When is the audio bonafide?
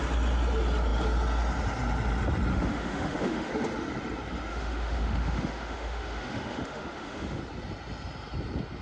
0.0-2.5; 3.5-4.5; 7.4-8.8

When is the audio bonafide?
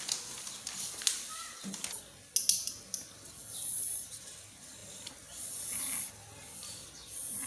0.0-7.5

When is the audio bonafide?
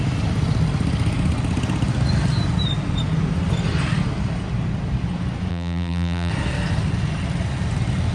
0.0-5.5; 6.3-8.1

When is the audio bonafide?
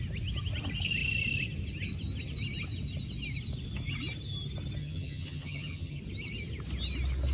0.0-4.8; 6.0-7.3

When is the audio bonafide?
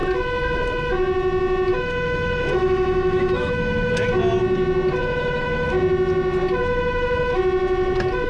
0.0-1.7; 3.9-5.0; 5.7-6.6; 7.4-8.3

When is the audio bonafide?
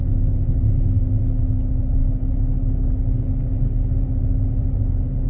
0.0-5.3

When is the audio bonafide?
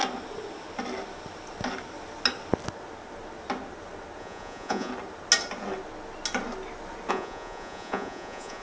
0.0-4.2; 4.9-7.1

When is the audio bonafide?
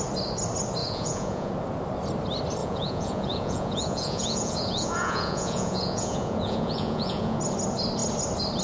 0.0-0.8; 1.5-2.6; 7.4-8.6